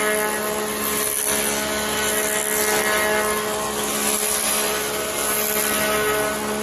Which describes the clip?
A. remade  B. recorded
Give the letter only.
B